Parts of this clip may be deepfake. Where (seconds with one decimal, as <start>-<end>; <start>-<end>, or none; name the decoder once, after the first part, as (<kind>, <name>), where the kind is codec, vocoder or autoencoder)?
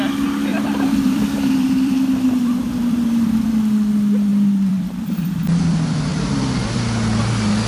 0.5-3.5 (vocoder, BigVGAN v2); 4.3-5.5; 6.1-7.2